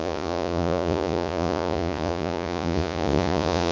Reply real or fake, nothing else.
fake